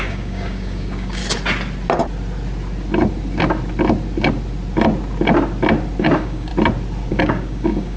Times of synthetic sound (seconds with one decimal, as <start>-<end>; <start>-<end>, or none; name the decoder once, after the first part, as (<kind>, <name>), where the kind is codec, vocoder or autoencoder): 0.0-1.2 (codec, DAC); 6.0-6.5; 7.1-8.0